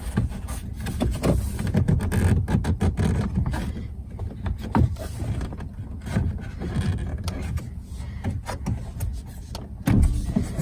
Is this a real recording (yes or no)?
yes